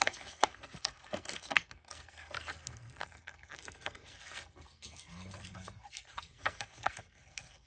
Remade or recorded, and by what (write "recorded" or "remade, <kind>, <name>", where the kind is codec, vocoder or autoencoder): remade, codec, SNAC